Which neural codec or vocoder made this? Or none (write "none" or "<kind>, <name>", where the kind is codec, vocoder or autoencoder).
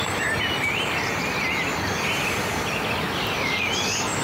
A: none